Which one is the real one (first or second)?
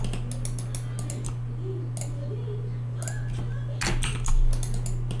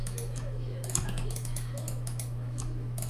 first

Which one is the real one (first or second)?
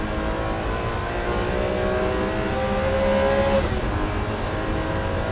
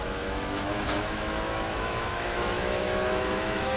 first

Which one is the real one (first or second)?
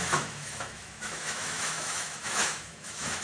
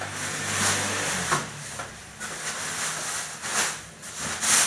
second